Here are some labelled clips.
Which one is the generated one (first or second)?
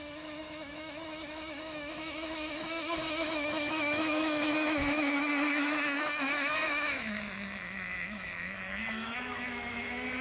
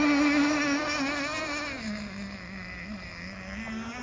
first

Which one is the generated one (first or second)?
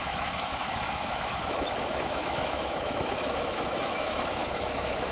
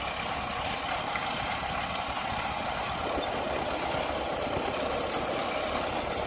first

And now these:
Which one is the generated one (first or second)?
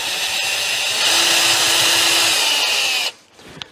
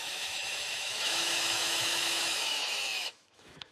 second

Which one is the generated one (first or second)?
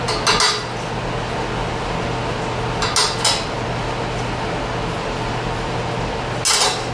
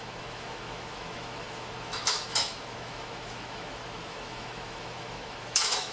second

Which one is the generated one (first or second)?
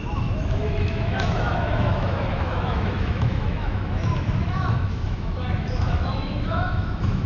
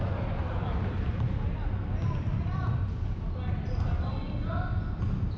first